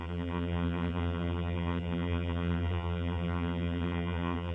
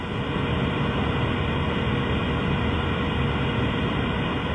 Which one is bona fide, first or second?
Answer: second